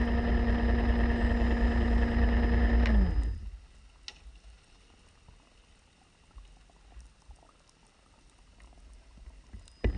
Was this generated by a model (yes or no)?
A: no